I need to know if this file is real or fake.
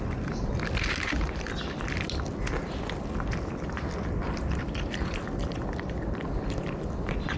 real